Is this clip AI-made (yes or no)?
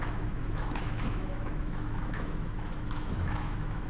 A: yes